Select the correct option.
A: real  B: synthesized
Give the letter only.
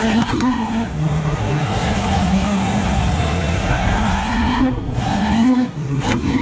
B